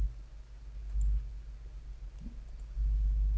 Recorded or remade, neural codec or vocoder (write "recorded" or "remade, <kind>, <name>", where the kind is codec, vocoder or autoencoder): recorded